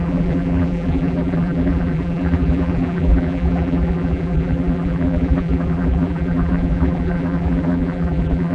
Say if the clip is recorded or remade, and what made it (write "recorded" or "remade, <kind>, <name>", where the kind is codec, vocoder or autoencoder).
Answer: remade, vocoder, BigVGAN v2